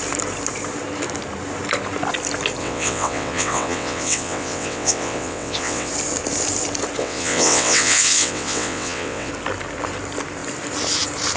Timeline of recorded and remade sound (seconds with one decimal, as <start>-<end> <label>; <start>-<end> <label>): 0.0-2.6 recorded; 2.6-5.9 remade; 5.9-7.0 recorded; 7.0-9.3 remade; 9.3-11.4 recorded